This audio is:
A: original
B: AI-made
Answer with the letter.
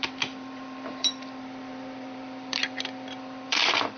B